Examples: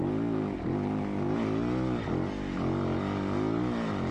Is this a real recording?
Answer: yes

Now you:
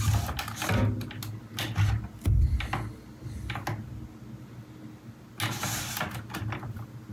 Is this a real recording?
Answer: yes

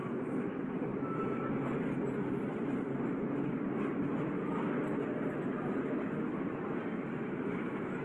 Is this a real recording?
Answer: yes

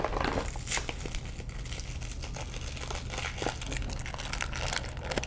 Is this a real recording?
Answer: yes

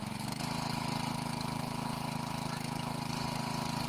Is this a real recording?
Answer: yes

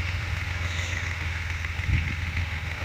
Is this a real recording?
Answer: no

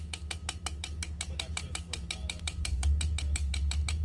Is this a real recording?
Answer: no